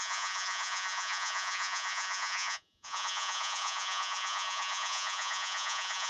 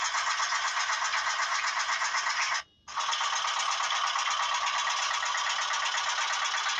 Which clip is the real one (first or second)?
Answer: second